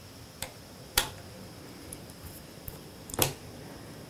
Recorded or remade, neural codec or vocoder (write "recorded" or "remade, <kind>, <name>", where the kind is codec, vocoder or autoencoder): remade, vocoder, BigVGAN v2